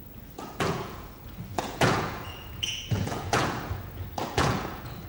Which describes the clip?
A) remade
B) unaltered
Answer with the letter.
A